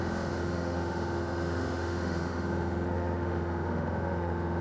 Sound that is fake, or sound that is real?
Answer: fake